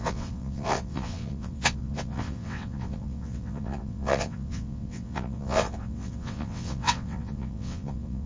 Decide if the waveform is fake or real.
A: fake